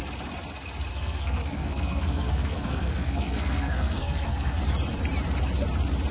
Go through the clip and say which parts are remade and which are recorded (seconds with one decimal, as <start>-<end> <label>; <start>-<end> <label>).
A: 0.0-0.9 recorded; 0.9-4.6 remade; 4.6-6.1 recorded